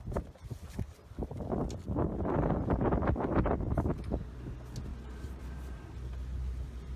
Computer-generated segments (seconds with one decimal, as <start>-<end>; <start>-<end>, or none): 4.9-5.8